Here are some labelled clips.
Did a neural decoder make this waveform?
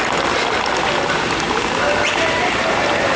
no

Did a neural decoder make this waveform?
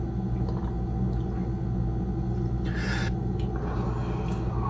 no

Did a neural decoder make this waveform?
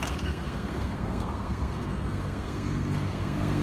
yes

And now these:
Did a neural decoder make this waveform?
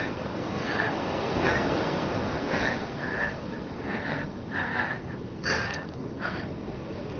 yes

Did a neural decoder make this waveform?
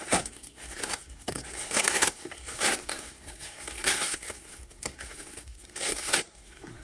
yes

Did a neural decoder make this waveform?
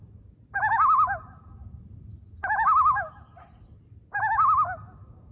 no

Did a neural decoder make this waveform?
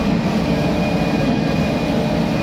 no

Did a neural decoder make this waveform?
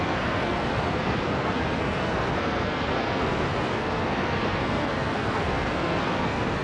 yes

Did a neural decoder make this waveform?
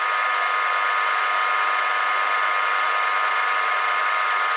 no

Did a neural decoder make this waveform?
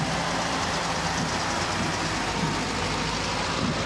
no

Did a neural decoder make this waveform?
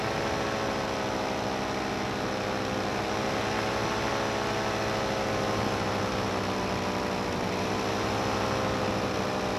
no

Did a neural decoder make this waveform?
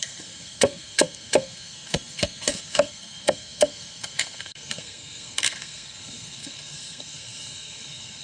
yes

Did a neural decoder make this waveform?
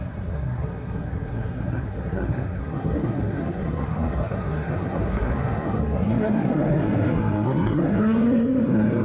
yes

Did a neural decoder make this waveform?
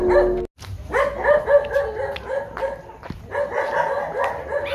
no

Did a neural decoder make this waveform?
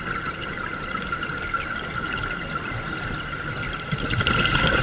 no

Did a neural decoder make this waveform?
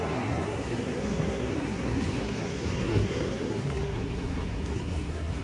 yes